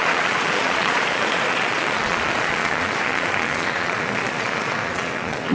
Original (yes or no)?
no